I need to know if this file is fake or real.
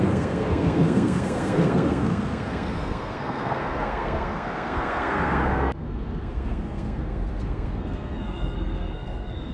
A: fake